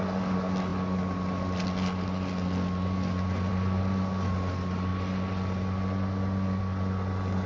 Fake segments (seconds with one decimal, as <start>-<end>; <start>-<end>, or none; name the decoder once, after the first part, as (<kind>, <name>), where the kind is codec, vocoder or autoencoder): none